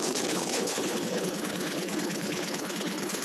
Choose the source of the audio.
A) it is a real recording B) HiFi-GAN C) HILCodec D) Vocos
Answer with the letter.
C